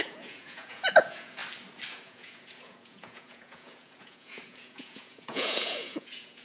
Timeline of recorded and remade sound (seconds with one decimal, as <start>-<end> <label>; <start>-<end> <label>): 0.0-1.4 remade; 1.4-1.9 recorded; 1.9-6.4 remade